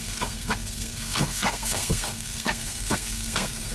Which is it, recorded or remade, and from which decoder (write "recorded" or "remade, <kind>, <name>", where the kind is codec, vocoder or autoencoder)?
remade, codec, SNAC